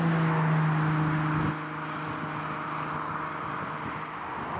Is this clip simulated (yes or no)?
no